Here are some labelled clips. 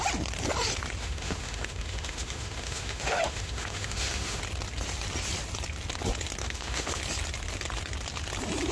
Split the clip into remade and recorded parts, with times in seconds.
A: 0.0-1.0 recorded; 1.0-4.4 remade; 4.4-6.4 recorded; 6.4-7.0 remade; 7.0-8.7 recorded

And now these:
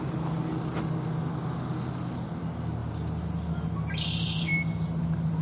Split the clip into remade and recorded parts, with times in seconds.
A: 0.0-5.4 recorded

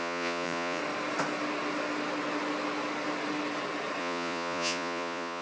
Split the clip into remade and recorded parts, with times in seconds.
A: 0.0-0.8 remade; 0.8-4.0 recorded; 4.0-5.4 remade

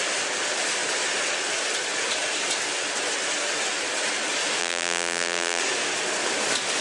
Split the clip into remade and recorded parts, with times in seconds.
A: 0.0-4.6 recorded; 4.6-5.6 remade; 5.6-6.8 recorded

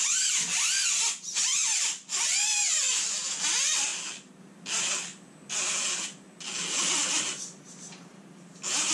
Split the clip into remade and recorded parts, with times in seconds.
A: 0.0-8.9 recorded

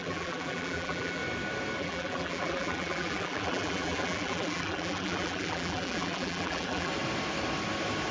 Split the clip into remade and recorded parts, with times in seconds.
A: 0.0-1.2 remade; 1.2-1.8 recorded; 1.8-6.9 remade; 6.9-8.1 recorded

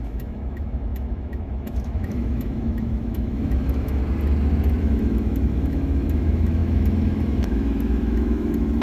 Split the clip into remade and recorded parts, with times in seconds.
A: 0.0-4.0 remade; 4.0-4.8 recorded; 4.8-8.8 remade